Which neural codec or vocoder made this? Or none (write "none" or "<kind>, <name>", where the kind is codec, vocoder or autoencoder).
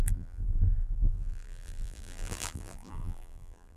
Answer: vocoder, BigVGAN v2